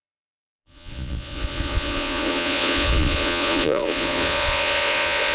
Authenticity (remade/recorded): remade